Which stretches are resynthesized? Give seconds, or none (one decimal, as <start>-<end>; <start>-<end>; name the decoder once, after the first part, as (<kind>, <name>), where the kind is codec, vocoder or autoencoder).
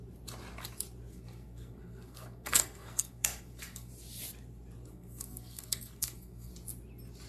1.1-3.9 (codec, SNAC); 4.9-6.5